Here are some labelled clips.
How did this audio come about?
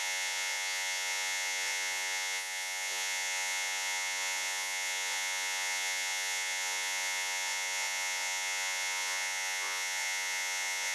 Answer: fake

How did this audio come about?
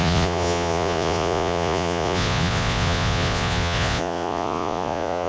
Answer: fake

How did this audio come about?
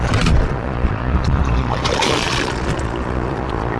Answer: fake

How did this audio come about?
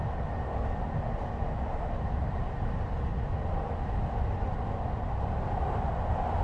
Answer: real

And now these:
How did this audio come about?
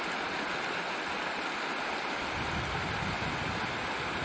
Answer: real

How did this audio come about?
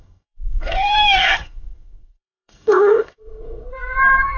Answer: fake